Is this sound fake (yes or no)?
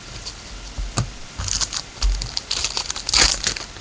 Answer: no